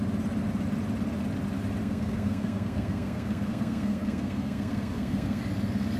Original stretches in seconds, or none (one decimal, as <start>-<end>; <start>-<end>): 0.0-1.8; 5.4-6.0